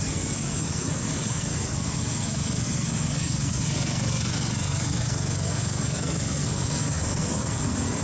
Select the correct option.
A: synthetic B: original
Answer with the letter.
A